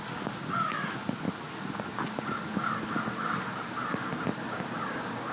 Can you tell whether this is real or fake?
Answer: real